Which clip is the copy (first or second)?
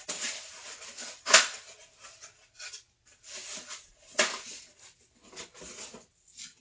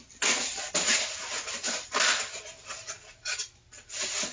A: first